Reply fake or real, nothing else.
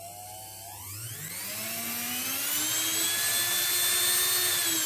real